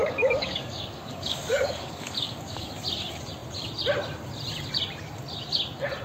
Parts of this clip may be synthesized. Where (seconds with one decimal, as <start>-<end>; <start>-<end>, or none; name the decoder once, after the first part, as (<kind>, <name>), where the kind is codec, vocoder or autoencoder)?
0.0-2.7 (codec, DAC)